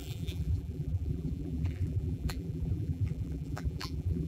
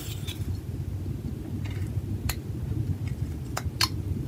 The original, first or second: second